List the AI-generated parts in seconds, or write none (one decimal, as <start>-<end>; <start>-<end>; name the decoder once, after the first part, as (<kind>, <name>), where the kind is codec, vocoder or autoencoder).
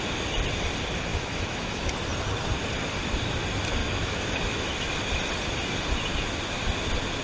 1.1-1.9 (autoencoder, DAC-VAE); 3.8-4.9